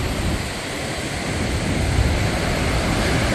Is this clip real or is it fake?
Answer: real